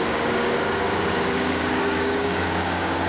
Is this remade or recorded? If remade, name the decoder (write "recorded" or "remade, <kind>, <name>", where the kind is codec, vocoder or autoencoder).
remade, codec, DAC